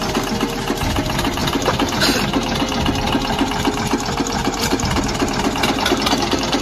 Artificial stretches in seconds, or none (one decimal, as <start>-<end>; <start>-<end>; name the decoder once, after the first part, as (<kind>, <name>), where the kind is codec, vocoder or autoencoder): 1.4-2.6 (vocoder, BigVGAN v2); 4.4-5.0